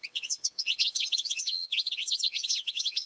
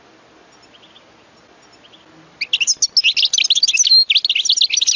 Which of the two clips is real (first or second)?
second